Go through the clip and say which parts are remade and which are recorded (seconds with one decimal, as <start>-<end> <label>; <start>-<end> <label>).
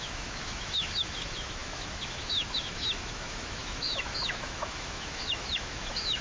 0.0-6.2 remade